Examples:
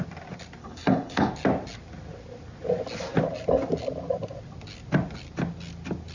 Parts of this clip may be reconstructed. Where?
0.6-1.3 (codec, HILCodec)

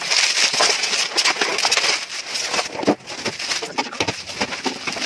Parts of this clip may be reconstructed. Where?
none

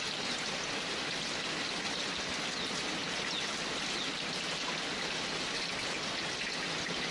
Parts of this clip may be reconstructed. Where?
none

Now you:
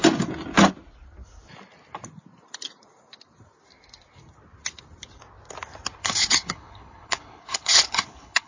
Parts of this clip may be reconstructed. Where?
6.0-8.5 (codec, HILCodec)

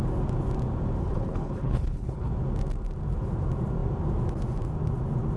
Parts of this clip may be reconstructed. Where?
1.0-2.3 (codec, HILCodec)

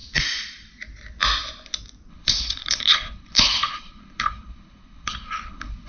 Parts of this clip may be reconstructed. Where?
2.1-5.9 (codec, HILCodec)

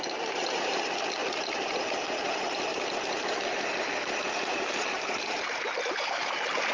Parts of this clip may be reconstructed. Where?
none